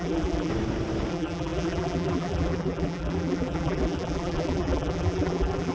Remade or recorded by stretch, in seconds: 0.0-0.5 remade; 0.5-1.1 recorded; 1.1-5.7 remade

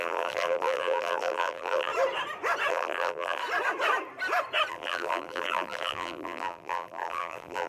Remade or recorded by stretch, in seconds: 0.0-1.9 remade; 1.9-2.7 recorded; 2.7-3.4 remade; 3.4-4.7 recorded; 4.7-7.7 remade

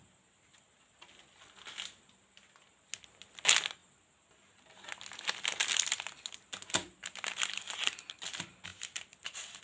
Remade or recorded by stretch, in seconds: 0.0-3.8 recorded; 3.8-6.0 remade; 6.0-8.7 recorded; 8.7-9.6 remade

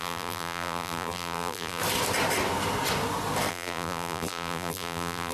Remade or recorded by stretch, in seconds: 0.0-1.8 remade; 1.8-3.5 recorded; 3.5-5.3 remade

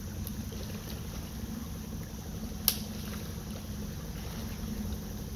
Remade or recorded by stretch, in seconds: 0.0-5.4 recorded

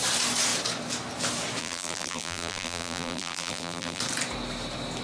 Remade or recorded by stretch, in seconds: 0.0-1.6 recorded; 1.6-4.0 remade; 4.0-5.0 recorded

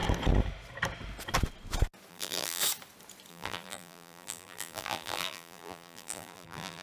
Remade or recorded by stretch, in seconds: 0.0-2.1 recorded; 2.1-2.6 remade; 2.6-3.3 recorded; 3.3-6.8 remade